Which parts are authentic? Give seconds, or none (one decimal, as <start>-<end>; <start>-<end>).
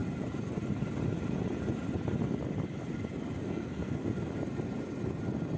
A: 0.0-3.4; 4.0-5.6